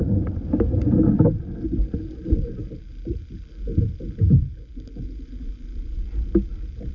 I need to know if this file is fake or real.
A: real